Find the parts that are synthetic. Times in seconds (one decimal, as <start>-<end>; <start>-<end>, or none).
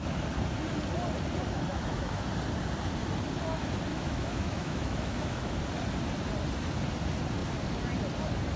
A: 1.7-2.3; 3.9-5.6